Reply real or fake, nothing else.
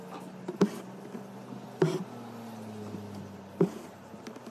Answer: real